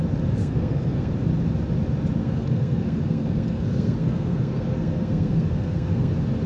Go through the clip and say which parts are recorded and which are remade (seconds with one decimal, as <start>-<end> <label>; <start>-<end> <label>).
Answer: 0.0-0.4 recorded; 0.4-1.1 remade; 1.1-2.2 recorded; 2.2-6.1 remade; 6.1-6.5 recorded